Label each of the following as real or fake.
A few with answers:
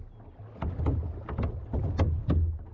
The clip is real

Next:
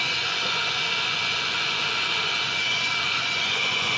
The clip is fake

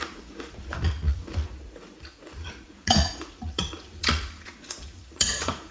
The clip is fake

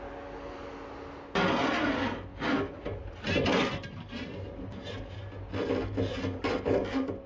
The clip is real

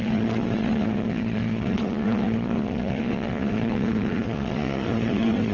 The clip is fake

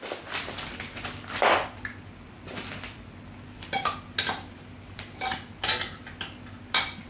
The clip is real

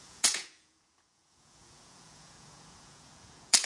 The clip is fake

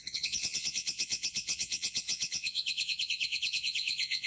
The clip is fake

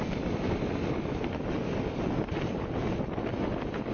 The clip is real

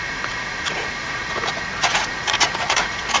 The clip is fake